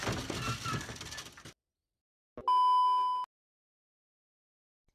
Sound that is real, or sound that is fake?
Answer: real